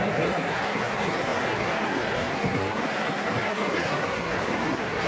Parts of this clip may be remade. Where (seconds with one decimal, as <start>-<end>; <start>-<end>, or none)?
0.0-5.1